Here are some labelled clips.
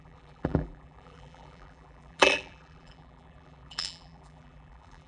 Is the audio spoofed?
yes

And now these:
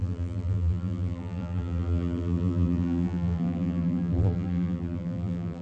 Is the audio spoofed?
yes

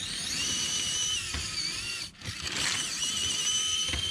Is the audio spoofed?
no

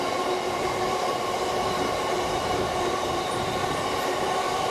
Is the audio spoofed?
no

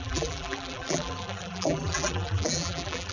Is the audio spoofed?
yes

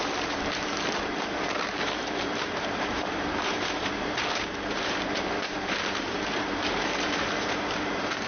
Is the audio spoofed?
yes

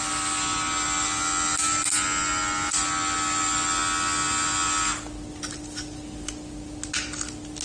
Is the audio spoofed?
no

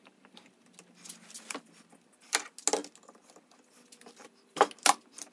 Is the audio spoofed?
no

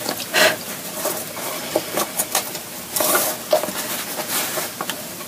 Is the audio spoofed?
no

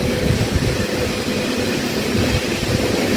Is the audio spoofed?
no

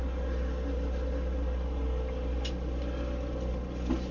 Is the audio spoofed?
no